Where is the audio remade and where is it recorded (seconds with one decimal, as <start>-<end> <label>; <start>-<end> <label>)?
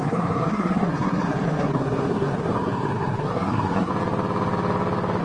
0.0-3.9 remade; 3.9-5.2 recorded